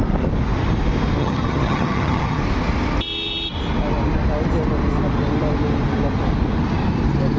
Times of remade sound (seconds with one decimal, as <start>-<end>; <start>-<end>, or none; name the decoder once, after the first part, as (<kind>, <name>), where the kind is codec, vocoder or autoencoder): 1.2-2.4 (vocoder, HiFi-GAN)